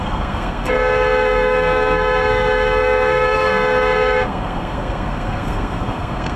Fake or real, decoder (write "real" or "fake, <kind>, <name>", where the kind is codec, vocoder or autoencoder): fake, codec, SNAC